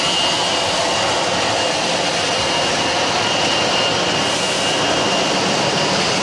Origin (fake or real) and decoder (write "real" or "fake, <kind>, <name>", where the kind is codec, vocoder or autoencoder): real